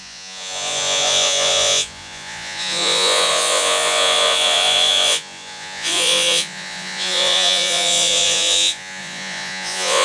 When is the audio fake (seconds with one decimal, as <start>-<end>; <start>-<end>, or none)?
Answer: 0.0-10.0